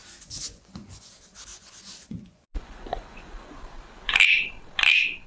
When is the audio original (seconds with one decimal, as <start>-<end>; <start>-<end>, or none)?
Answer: 1.1-1.5; 3.6-5.3